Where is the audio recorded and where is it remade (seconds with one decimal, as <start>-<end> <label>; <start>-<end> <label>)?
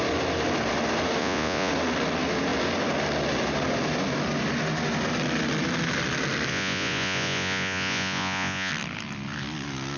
0.0-1.2 recorded; 1.2-1.7 remade; 1.7-6.5 recorded; 6.5-8.7 remade; 8.7-10.0 recorded